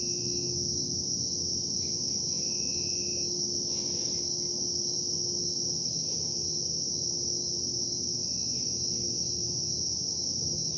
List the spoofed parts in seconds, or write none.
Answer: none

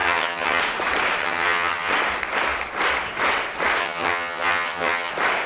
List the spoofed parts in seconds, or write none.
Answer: 0.0-0.6; 1.2-1.9; 3.8-5.1

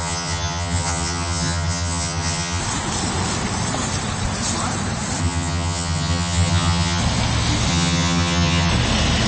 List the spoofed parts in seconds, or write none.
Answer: 0.0-2.6; 5.2-7.0; 7.7-8.7

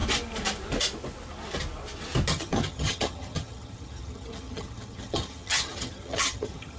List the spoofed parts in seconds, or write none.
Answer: 2.3-6.8

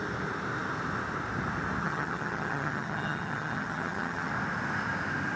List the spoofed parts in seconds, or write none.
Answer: 1.8-4.3

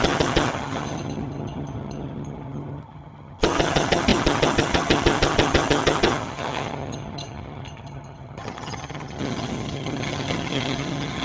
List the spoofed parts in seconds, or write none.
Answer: 0.0-11.2